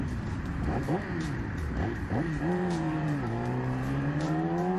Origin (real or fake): fake